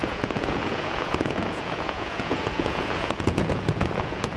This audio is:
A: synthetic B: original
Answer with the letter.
A